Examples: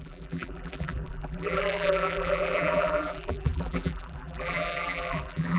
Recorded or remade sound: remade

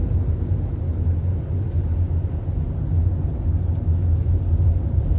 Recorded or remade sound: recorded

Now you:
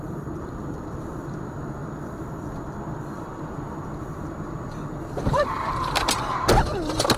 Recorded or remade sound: remade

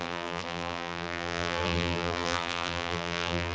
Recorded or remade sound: remade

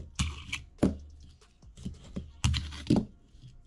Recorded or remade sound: recorded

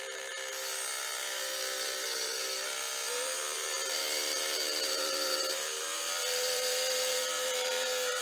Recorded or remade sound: remade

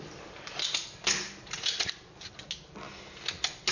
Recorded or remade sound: recorded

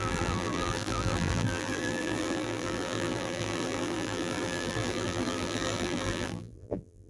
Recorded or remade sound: remade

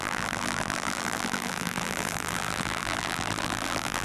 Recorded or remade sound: remade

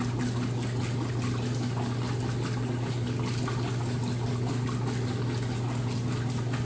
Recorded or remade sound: recorded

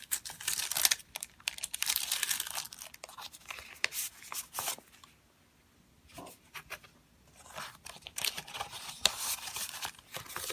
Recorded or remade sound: recorded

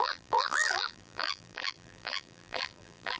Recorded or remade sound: remade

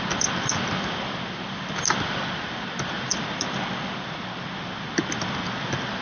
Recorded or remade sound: recorded